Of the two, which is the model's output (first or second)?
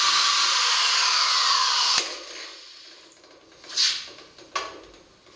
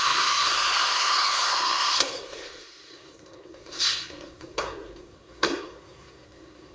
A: second